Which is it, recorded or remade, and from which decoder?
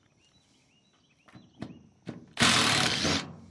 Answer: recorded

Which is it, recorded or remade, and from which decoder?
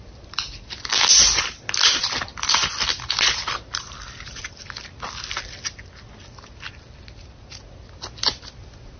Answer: recorded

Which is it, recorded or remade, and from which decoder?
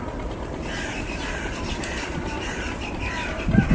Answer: recorded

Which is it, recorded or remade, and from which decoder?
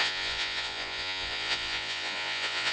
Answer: remade, vocoder, Vocos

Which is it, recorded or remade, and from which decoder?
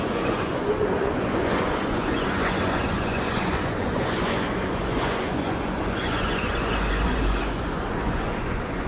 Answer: remade, vocoder, Vocos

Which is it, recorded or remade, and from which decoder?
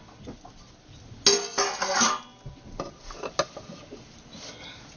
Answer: recorded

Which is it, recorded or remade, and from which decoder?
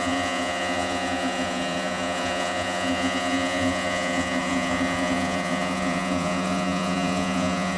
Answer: remade, vocoder, Vocos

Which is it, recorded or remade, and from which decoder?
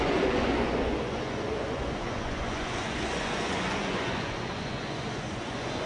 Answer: remade, vocoder, Vocos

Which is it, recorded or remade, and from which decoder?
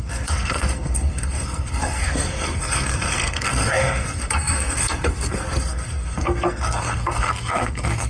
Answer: remade, codec, SNAC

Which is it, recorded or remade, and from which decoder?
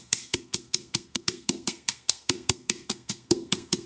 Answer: remade, codec, SNAC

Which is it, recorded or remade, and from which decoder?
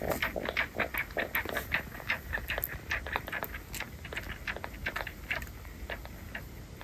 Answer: recorded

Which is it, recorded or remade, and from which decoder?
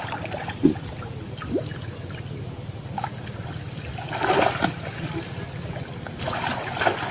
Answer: recorded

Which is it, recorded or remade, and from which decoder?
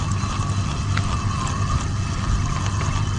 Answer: recorded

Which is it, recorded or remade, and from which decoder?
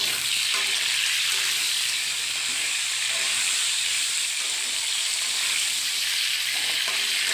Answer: remade, vocoder, BigVGAN v2